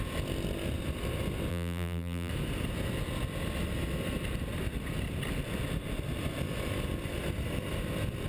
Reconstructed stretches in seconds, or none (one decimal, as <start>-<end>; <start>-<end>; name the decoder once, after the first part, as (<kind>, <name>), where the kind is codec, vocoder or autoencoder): 1.5-2.3 (vocoder, BigVGAN v2)